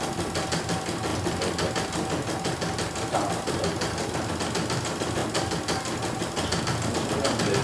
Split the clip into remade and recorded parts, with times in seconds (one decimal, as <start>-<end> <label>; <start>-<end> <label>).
0.0-7.6 recorded